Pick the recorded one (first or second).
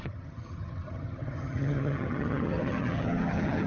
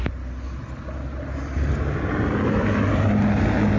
second